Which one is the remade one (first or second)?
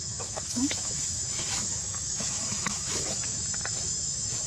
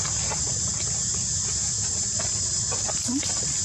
first